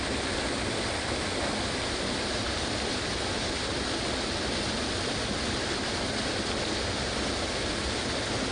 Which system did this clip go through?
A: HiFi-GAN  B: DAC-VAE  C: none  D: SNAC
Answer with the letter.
C